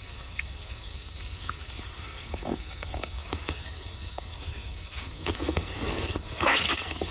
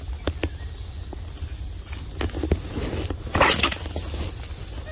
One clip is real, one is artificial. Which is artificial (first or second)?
first